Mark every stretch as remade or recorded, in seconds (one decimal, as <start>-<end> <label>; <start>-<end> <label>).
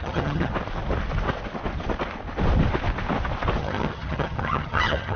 0.0-0.5 remade; 0.5-3.6 recorded; 3.6-5.2 remade